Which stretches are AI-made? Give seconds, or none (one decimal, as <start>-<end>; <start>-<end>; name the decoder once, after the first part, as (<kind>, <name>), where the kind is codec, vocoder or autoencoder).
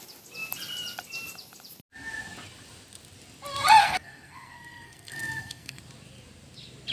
3.8-5.8 (codec, SNAC)